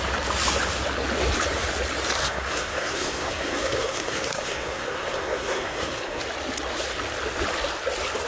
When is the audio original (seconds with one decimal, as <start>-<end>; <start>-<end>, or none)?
0.0-2.2; 6.2-8.3